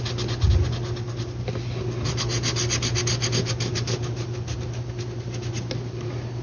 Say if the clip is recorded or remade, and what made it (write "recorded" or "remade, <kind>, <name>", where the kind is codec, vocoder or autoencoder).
recorded